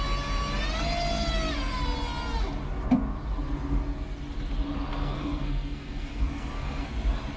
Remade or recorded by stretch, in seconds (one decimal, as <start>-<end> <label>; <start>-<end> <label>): 0.0-4.9 recorded; 4.9-6.9 remade; 6.9-7.4 recorded